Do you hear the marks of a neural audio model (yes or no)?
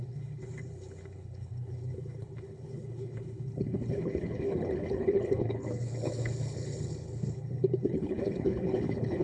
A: yes